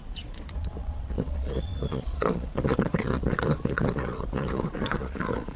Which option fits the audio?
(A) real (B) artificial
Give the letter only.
B